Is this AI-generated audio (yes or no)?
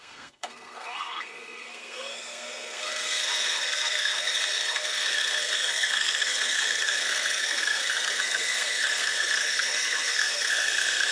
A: yes